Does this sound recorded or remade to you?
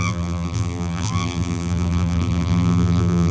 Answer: remade